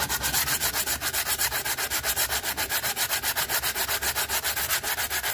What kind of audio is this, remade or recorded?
recorded